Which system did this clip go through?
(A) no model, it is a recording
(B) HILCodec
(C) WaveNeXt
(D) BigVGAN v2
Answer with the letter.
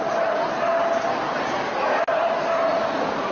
A